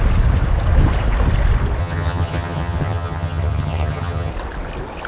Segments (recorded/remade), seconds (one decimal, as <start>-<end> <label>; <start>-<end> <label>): 0.0-1.8 recorded; 1.8-4.3 remade; 4.3-5.1 recorded